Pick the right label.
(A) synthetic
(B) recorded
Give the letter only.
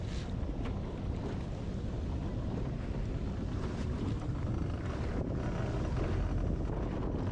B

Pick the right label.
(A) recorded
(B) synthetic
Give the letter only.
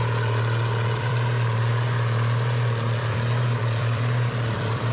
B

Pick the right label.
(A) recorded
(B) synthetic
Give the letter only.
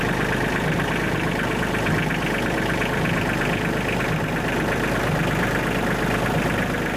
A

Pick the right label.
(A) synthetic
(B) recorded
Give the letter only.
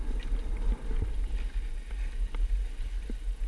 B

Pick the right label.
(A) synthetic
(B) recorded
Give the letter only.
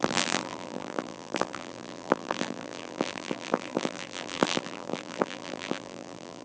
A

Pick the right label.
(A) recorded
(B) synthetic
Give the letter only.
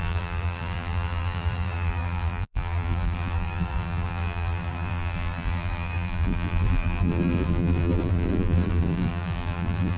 B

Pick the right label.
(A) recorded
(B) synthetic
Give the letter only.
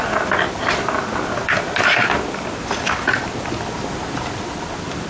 A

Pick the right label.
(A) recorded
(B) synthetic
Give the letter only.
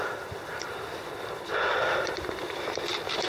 B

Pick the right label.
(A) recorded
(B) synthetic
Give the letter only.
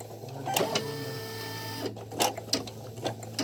A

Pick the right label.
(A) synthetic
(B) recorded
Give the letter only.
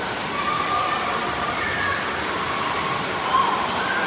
A